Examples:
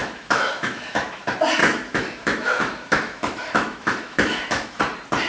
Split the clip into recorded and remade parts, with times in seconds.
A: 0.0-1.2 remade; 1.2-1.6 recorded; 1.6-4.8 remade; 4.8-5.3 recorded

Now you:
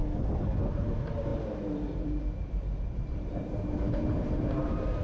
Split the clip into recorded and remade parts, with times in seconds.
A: 0.0-0.7 recorded; 0.7-5.0 remade

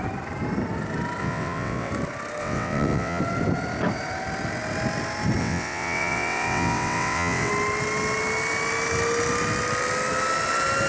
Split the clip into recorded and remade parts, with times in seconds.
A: 0.0-1.2 recorded; 1.2-1.9 remade; 1.9-2.4 recorded; 2.4-3.2 remade; 3.2-5.4 recorded; 5.4-7.5 remade; 7.5-10.9 recorded

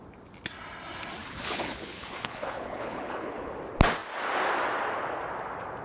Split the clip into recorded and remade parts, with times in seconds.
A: 0.0-1.2 recorded; 1.2-3.5 remade; 3.5-5.8 recorded

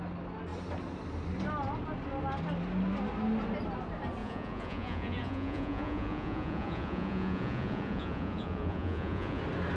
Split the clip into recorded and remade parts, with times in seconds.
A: 0.0-4.2 recorded; 4.2-9.4 remade; 9.4-9.8 recorded

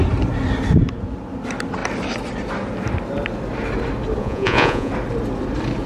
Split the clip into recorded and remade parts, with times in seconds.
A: 0.0-4.2 recorded; 4.2-4.9 remade; 4.9-5.9 recorded

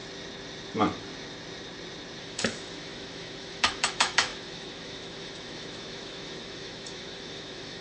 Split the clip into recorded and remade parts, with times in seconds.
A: 0.0-2.2 recorded; 2.2-7.8 remade

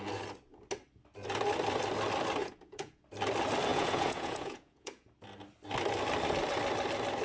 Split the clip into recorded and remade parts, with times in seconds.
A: 0.0-2.4 recorded; 2.4-3.0 remade; 3.0-3.7 recorded; 3.7-5.1 remade; 5.1-7.2 recorded